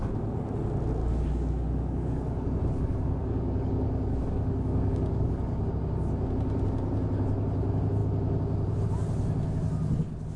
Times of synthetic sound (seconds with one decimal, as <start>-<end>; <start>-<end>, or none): 1.0-5.7